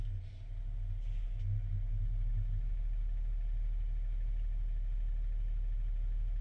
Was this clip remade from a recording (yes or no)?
no